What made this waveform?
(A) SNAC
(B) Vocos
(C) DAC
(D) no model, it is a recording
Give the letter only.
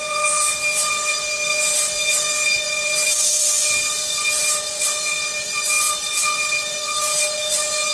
B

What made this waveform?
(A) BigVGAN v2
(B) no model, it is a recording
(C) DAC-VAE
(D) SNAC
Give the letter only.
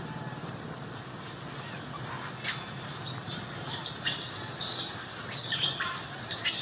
B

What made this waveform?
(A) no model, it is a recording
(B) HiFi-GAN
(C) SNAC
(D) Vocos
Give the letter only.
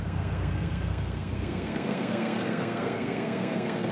C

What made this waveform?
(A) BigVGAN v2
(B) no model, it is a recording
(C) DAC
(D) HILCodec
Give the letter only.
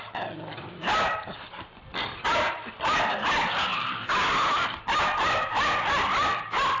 B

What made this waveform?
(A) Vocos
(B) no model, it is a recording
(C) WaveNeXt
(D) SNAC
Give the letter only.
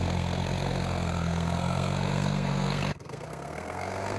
D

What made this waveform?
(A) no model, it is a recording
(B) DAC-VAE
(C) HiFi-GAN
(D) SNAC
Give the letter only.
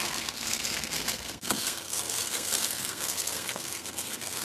D